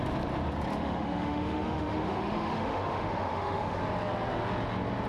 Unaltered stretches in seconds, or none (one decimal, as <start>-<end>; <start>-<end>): 0.0-0.7; 3.8-5.1